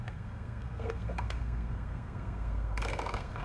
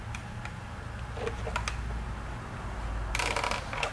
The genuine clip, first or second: second